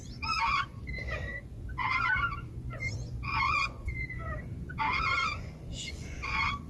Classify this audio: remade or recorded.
remade